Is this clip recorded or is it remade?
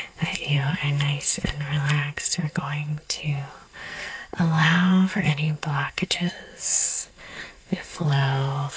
remade